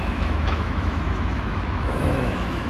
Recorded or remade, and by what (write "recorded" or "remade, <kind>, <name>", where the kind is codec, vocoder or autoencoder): remade, autoencoder, DAC-VAE